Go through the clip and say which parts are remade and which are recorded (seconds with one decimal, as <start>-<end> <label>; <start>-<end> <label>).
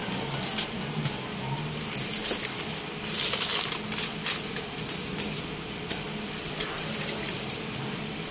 0.0-2.7 recorded; 2.7-8.3 remade